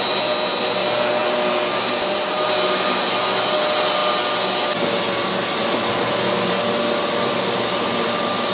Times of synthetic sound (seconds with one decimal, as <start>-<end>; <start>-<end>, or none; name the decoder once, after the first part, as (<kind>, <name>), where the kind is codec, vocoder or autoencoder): none